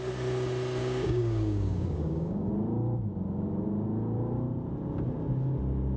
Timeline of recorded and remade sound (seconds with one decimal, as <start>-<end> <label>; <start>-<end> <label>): 0.0-0.8 recorded; 0.8-2.5 remade; 2.5-6.0 recorded